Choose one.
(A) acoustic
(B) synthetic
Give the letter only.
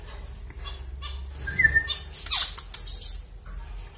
A